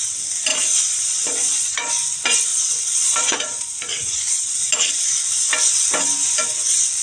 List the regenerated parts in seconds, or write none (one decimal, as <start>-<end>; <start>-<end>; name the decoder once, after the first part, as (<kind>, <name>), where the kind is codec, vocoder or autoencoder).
0.5-1.9 (vocoder, Vocos); 2.5-4.7